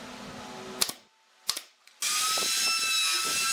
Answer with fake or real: real